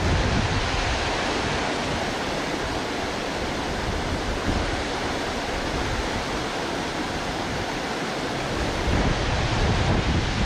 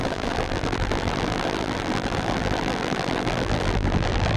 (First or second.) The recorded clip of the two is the first